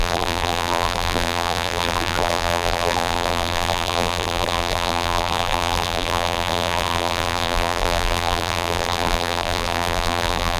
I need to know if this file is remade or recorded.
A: remade